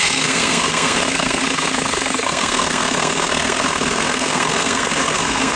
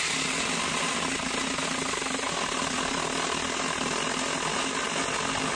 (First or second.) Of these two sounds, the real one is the second